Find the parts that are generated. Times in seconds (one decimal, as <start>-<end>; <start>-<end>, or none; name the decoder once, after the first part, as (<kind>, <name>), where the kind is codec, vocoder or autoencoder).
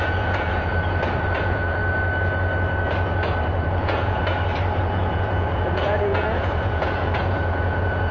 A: 0.0-0.7 (vocoder, Vocos); 1.4-1.8; 3.8-4.2; 4.8-8.1